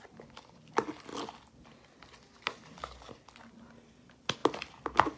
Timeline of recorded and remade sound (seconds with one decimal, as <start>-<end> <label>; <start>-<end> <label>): 0.0-5.2 recorded